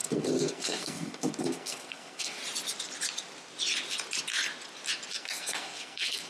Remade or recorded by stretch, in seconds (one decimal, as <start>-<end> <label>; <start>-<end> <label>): 0.0-2.4 remade; 2.4-5.1 recorded; 5.1-6.3 remade